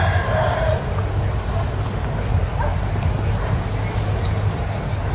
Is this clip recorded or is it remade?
recorded